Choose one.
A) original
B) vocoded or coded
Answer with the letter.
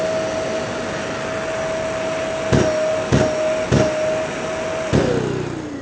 A